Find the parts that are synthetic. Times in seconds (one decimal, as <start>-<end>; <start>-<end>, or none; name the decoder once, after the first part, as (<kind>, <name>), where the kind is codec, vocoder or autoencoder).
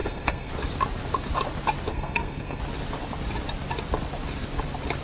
0.0-0.5 (codec, SNAC); 1.9-2.6